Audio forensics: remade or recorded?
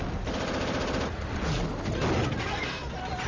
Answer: recorded